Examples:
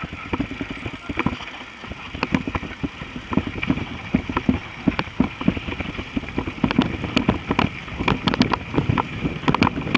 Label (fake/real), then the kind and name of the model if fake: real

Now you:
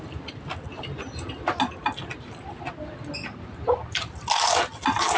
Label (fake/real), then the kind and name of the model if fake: real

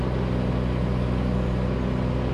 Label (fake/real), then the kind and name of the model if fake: real